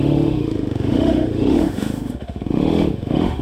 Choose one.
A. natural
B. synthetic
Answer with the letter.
B